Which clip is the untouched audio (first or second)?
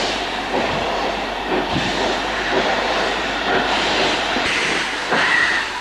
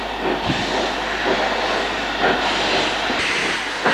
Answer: second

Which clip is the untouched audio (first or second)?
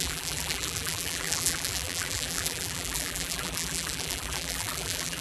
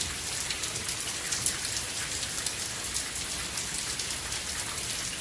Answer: second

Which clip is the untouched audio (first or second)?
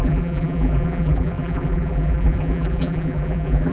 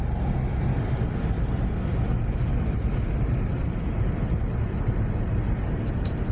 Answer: second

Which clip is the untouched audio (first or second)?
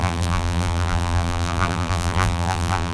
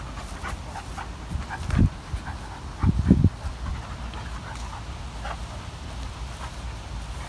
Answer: second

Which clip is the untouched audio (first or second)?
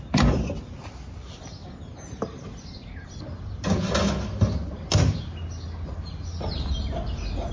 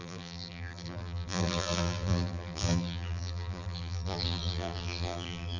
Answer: first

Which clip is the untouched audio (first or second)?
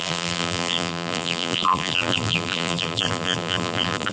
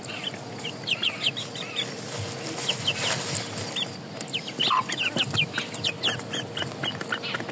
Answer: second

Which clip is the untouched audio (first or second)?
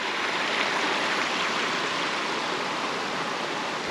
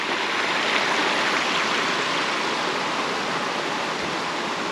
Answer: second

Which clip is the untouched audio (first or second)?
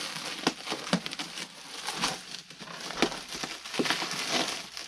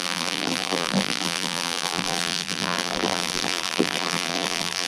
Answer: first